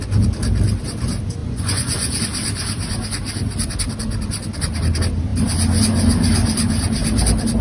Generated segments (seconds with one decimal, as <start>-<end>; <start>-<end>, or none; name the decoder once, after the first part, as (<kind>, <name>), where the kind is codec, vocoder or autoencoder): 1.4-2.2 (vocoder, Vocos)